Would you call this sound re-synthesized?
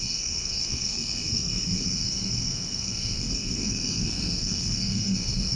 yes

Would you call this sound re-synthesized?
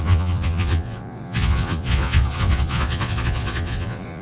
yes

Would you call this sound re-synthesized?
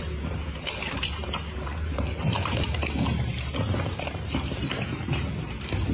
yes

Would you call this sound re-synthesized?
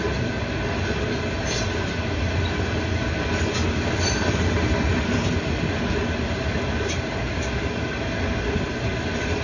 no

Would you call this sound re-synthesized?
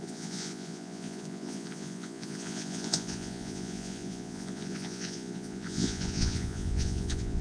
yes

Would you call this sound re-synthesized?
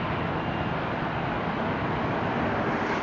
no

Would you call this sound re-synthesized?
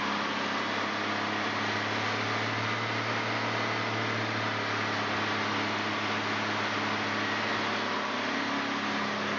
no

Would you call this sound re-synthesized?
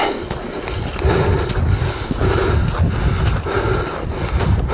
no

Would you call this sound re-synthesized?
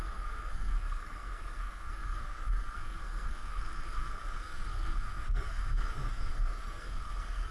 yes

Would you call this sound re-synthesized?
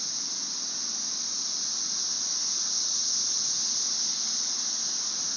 no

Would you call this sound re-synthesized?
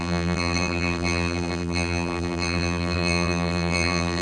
yes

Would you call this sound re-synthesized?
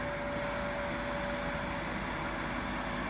no